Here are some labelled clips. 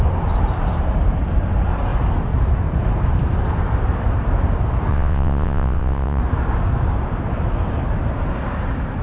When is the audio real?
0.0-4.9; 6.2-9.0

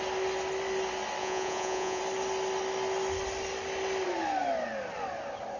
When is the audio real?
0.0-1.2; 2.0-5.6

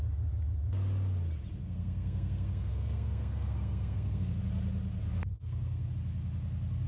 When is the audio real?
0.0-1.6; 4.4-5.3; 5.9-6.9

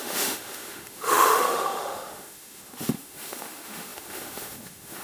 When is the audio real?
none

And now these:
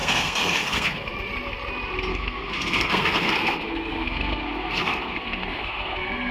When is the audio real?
1.1-2.1